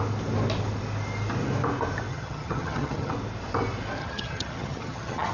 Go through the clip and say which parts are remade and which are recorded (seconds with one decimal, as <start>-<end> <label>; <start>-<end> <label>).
0.0-2.1 recorded; 2.1-3.1 remade; 3.1-4.0 recorded; 4.0-5.3 remade